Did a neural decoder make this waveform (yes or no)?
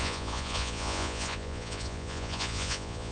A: yes